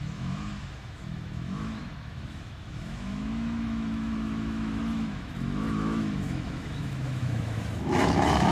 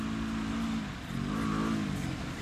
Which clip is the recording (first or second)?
second